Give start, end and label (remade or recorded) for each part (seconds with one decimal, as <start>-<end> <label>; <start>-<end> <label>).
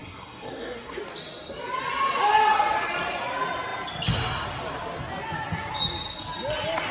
0.0-1.0 remade; 1.0-6.9 recorded